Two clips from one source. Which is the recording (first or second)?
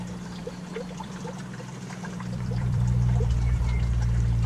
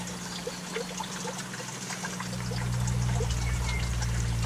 second